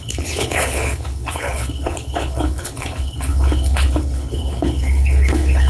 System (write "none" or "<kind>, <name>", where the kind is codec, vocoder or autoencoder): codec, HILCodec